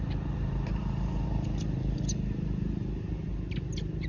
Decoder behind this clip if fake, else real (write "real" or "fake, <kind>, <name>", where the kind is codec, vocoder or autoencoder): real